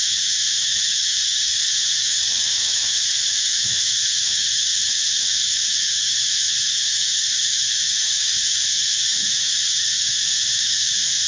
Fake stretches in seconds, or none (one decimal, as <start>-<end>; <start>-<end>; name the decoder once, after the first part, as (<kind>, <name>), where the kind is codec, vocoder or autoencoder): 0.0-11.3 (autoencoder, DAC-VAE)